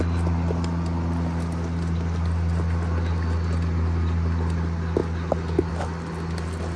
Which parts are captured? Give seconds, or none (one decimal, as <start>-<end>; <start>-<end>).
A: 0.0-6.8